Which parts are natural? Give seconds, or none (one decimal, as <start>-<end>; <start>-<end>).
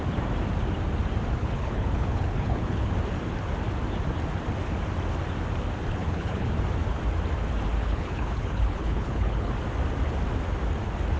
0.0-1.4; 2.9-6.0; 6.5-7.8; 9.5-11.2